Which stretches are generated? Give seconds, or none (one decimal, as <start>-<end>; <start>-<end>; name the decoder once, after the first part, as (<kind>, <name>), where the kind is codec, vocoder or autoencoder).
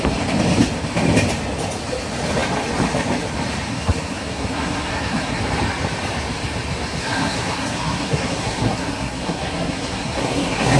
3.7-5.4 (codec, SNAC); 7.0-10.8